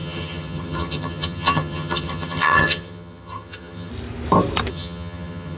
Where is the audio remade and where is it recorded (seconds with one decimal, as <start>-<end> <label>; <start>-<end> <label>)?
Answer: 0.0-3.9 remade; 3.9-4.7 recorded; 4.7-5.6 remade